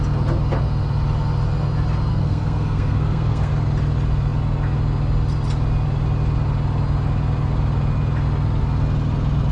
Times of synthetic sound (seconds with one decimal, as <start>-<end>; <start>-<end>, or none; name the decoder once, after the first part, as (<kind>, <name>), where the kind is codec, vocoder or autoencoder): 2.1-3.5 (codec, SNAC)